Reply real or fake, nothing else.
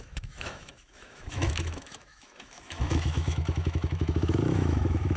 fake